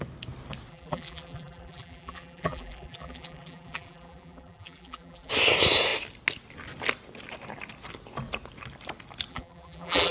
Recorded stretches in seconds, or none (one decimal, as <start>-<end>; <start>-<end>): 0.0-0.7; 5.3-9.3